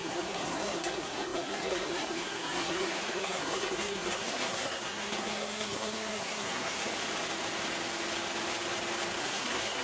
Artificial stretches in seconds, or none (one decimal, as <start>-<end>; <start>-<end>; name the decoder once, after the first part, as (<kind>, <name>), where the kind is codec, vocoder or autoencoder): 0.0-6.9 (codec, SNAC); 9.2-9.8